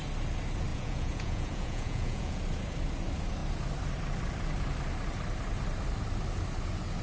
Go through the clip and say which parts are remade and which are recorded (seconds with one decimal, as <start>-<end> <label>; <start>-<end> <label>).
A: 0.0-0.7 recorded; 0.7-2.4 remade; 2.4-7.0 recorded